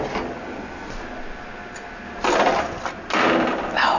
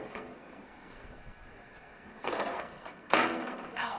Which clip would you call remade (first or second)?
second